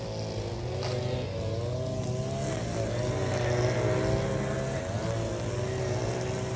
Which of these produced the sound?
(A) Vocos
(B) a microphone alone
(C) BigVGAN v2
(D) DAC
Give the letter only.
B